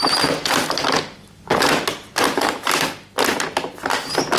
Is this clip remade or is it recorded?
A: recorded